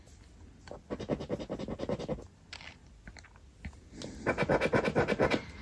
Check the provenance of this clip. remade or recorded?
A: recorded